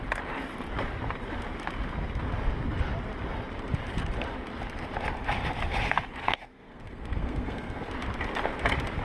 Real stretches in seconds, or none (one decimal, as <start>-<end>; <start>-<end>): 0.0-6.2; 7.9-9.0